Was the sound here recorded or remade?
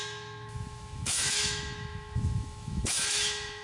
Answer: remade